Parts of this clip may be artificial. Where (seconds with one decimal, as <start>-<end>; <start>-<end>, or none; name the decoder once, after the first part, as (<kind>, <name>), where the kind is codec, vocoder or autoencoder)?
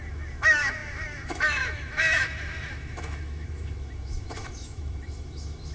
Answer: 0.0-5.7 (autoencoder, DAC-VAE)